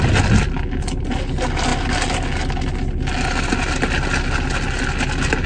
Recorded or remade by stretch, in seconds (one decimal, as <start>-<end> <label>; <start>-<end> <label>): 0.0-5.5 recorded